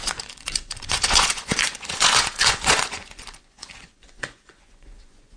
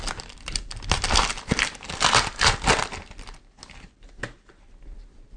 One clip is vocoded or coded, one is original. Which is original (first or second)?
second